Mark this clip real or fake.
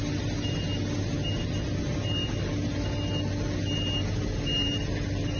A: real